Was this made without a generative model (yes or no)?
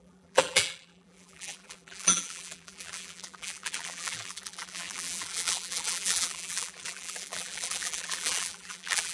no